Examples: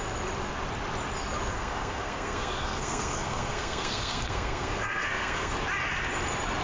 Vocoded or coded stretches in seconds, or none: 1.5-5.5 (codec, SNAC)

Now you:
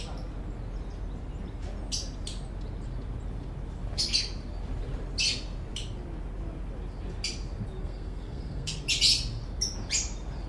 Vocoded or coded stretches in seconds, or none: 7.8-8.8 (codec, SNAC)

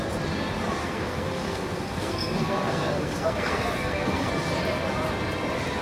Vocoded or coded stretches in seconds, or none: 0.8-4.3 (codec, SNAC)